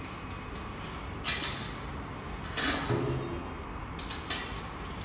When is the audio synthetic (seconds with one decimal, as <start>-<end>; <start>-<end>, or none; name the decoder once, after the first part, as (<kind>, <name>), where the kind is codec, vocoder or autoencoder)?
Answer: 0.0-1.3 (vocoder, BigVGAN v2); 4.3-5.0

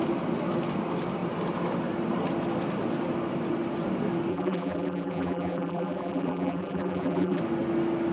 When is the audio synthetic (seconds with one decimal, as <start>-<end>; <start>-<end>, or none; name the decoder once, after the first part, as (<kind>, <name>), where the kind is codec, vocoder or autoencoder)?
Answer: 4.3-7.4 (vocoder, BigVGAN v2)

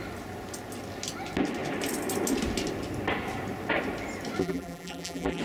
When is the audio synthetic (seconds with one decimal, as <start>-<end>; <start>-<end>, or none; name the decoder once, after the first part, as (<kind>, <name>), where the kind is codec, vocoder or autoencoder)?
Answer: 4.4-5.4 (vocoder, BigVGAN v2)

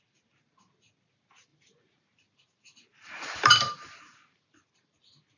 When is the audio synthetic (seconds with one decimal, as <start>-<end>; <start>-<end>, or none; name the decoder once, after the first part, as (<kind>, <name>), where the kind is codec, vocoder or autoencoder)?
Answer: 1.5-4.7 (vocoder, BigVGAN v2)

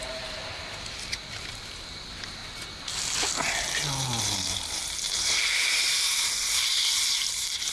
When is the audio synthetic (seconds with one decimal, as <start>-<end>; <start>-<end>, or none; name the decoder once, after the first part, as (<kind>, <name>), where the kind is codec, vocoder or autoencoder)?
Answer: 0.0-2.4 (vocoder, BigVGAN v2); 4.2-7.7